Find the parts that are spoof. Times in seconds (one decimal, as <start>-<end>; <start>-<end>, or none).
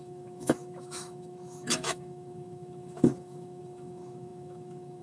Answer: 0.0-5.0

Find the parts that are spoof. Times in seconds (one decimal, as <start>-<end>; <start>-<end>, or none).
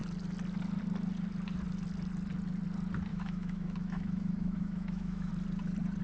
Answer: 3.1-5.3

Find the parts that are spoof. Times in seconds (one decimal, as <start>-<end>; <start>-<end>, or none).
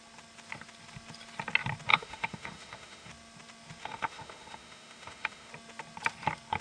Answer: 1.9-3.1; 3.8-5.5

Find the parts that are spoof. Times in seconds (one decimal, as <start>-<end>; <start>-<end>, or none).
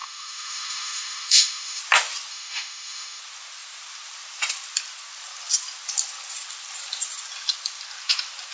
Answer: 0.0-1.8; 2.3-3.2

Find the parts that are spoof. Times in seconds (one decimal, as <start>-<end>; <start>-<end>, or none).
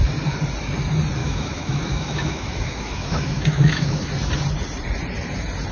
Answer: 1.2-4.1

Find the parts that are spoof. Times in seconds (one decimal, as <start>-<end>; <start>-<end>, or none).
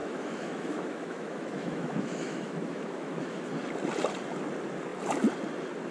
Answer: 0.0-3.5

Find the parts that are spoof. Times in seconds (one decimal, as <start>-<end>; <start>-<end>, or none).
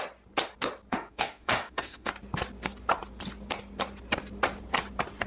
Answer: 0.9-2.1